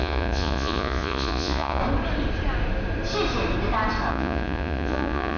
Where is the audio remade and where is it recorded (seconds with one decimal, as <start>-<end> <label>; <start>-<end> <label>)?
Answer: 0.0-1.8 remade; 1.8-4.1 recorded; 4.1-5.4 remade